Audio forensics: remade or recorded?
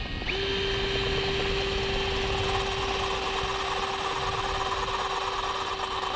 recorded